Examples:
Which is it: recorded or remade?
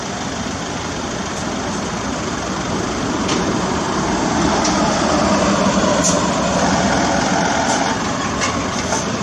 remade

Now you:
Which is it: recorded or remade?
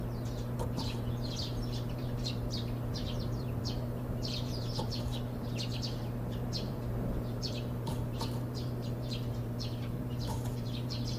remade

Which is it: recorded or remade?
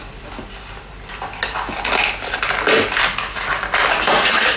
recorded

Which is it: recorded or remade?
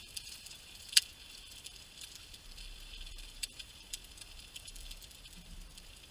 remade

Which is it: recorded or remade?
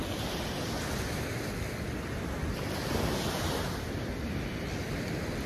recorded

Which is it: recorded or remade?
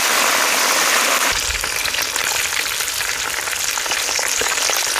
recorded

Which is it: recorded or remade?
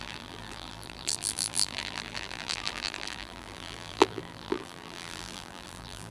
remade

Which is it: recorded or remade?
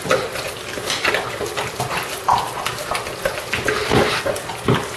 recorded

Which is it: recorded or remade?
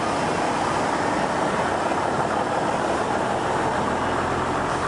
recorded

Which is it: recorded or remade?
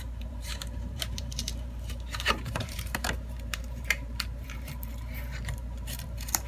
remade